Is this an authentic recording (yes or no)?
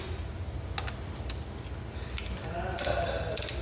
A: yes